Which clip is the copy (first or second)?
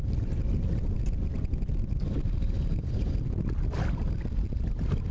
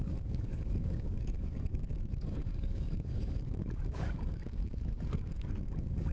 second